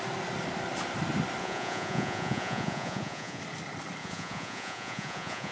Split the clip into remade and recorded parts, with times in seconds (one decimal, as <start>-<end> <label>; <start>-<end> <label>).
0.0-1.4 recorded; 1.4-3.4 remade; 3.4-4.0 recorded; 4.0-5.5 remade